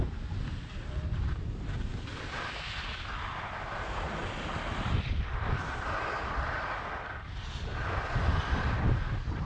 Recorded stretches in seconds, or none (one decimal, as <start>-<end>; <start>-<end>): 0.0-9.4